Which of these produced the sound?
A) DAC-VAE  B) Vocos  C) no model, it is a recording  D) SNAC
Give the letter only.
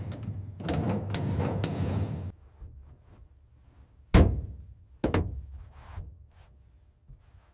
C